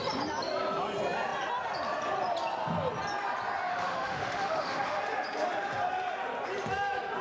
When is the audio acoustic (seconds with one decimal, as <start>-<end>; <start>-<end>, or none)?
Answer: 0.0-3.7; 5.0-7.2